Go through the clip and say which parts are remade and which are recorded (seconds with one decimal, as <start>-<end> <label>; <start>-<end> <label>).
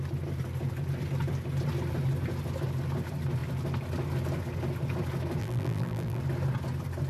0.0-5.4 recorded; 5.4-6.2 remade; 6.2-7.1 recorded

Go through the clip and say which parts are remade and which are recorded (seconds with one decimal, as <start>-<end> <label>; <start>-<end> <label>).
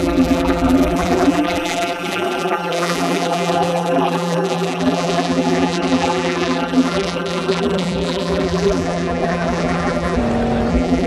0.0-10.2 remade; 10.2-10.7 recorded; 10.7-11.1 remade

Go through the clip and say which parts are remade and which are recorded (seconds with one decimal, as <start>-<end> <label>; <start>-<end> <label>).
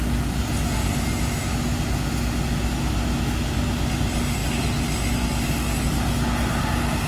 0.0-7.1 recorded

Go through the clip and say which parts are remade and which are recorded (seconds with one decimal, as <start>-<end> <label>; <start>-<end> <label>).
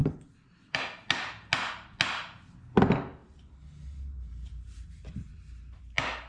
0.0-0.8 remade; 0.8-3.2 recorded; 3.2-5.8 remade; 5.8-6.3 recorded